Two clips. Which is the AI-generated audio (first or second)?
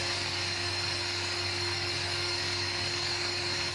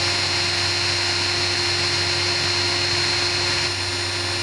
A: first